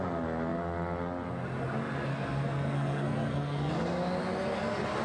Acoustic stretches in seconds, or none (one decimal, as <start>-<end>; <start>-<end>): 0.0-2.1; 3.7-5.0